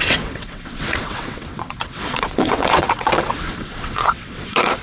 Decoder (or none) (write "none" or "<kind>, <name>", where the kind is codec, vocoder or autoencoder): vocoder, WaveNeXt